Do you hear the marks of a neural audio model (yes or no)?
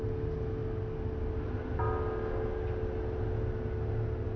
no